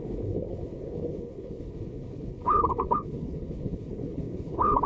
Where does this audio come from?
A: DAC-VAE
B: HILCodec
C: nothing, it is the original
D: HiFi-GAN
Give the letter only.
B